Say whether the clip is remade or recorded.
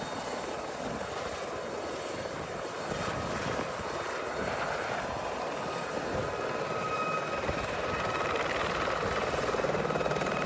recorded